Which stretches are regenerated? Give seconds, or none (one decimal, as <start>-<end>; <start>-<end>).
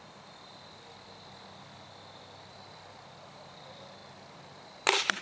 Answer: none